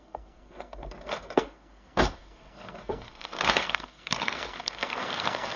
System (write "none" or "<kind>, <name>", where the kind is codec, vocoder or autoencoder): codec, SNAC